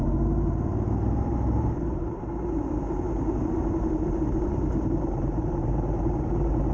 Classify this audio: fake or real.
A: fake